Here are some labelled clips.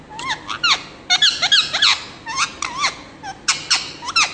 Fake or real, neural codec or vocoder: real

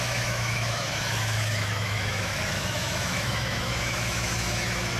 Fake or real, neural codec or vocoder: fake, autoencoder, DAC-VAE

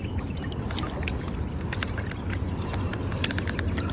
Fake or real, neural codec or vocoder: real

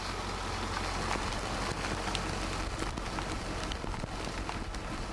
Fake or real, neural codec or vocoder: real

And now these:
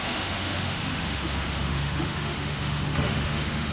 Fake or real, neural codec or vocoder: fake, autoencoder, DAC-VAE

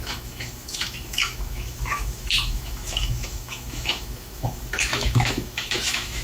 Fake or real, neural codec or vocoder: fake, autoencoder, DAC-VAE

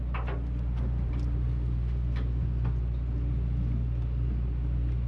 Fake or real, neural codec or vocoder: real